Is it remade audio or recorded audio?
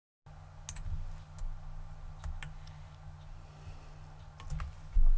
recorded